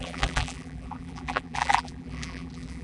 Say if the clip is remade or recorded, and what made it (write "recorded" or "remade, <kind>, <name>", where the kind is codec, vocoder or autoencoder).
remade, vocoder, BigVGAN v2